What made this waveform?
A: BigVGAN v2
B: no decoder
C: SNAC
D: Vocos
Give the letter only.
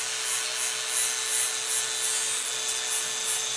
B